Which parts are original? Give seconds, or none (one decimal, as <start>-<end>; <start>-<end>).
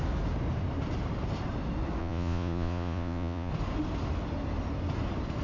0.0-2.0; 3.5-5.4